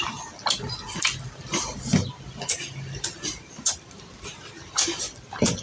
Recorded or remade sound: remade